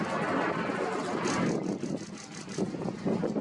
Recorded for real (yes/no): yes